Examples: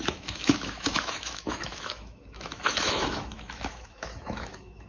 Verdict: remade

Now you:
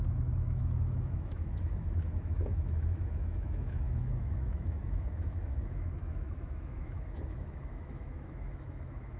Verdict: remade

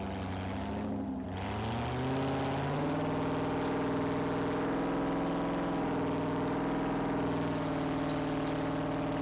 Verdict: recorded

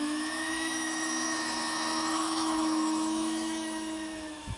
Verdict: remade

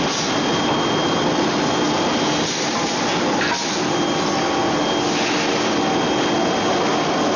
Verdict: recorded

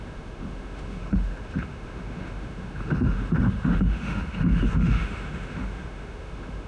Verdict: remade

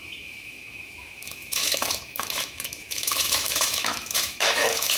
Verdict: remade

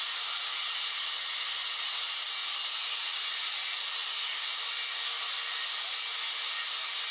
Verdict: recorded